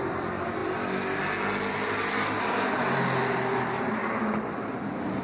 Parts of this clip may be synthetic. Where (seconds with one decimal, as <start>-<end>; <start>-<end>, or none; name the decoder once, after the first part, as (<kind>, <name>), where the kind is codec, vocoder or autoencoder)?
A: none